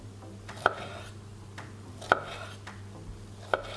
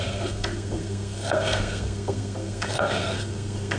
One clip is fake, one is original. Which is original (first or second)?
first